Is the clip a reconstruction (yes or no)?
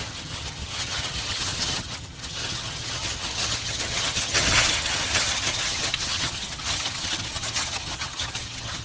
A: yes